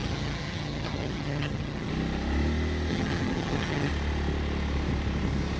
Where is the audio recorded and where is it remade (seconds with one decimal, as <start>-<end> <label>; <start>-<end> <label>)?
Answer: 0.0-1.9 remade; 1.9-2.9 recorded; 2.9-3.9 remade; 3.9-5.6 recorded